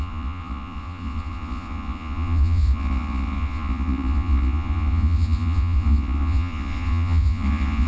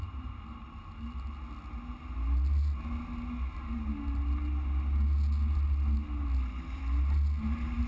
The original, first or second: second